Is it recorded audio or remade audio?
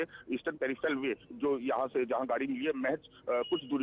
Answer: recorded